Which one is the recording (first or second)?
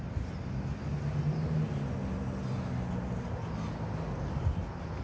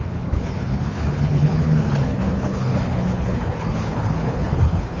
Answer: first